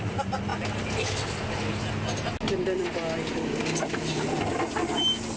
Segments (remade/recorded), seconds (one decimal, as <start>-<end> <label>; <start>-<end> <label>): 0.0-5.4 recorded